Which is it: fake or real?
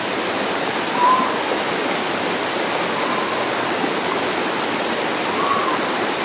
real